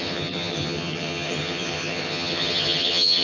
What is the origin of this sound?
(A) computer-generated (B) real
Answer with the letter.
A